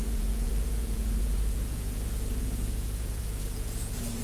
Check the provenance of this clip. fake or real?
fake